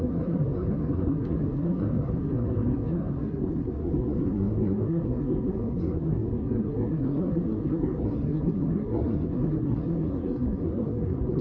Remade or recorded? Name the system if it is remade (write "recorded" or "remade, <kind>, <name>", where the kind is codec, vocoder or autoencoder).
remade, codec, SNAC